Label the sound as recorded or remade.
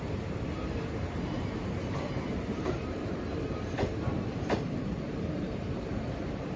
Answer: remade